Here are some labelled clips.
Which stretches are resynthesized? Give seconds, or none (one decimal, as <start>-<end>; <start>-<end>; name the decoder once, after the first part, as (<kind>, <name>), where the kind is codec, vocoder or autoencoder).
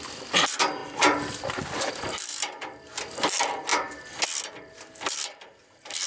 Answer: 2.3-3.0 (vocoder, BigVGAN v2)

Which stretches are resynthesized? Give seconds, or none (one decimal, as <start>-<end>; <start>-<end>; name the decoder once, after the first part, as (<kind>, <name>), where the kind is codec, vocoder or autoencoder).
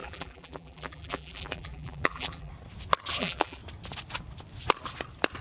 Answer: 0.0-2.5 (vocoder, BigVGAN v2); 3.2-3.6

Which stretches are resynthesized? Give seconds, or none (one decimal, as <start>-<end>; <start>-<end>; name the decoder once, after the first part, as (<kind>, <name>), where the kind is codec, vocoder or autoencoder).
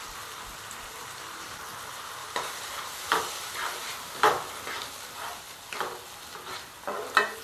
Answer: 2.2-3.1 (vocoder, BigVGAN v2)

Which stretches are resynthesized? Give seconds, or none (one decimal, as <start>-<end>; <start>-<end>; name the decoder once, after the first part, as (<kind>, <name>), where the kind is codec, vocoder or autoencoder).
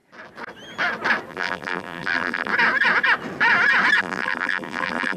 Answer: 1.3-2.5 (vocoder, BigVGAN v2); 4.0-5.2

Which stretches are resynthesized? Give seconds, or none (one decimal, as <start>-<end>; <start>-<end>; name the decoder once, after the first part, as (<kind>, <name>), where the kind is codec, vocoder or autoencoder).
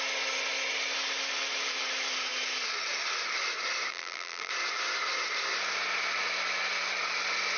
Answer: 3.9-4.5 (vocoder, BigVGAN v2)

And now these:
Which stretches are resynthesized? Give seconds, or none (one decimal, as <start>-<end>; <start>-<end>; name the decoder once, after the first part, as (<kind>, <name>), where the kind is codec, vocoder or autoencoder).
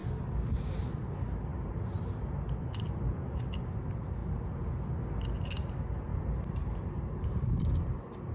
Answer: 6.1-7.6 (vocoder, BigVGAN v2)